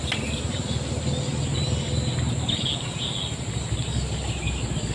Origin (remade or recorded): recorded